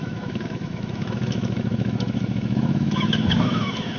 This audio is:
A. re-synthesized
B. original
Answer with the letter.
A